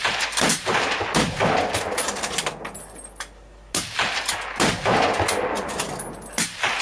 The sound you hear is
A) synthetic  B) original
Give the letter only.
B